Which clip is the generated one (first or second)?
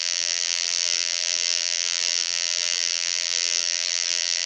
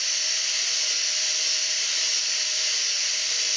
first